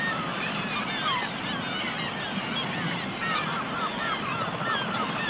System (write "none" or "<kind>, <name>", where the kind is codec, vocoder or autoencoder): none